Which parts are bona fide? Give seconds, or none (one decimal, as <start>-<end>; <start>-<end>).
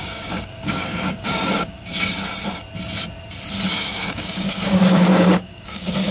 1.9-3.7